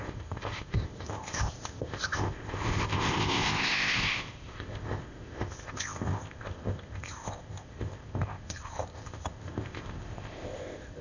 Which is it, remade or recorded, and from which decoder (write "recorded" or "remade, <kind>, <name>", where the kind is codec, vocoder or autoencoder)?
remade, codec, ZipCodec